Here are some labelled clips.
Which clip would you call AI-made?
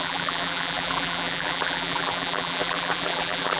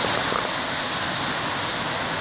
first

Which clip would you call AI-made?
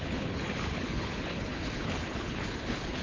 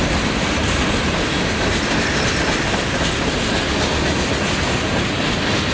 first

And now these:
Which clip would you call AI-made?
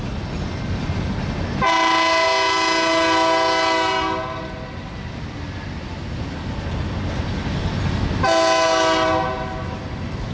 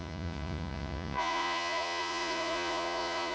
second